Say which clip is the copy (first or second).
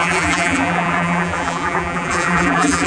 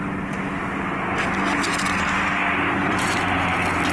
first